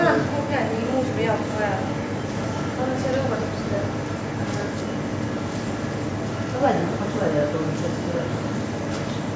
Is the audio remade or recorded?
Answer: recorded